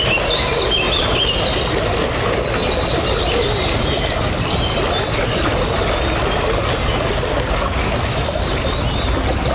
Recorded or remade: recorded